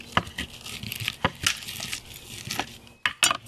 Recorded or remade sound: recorded